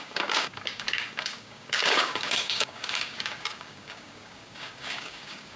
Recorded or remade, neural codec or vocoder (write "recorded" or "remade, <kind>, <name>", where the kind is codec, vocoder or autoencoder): remade, codec, DAC